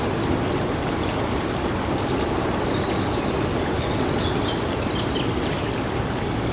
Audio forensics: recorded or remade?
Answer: recorded